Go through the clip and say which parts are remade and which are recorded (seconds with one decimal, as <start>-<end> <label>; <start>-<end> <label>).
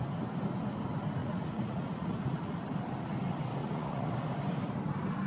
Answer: 0.0-1.2 recorded; 1.2-2.5 remade; 2.5-3.6 recorded; 3.6-4.1 remade; 4.1-5.3 recorded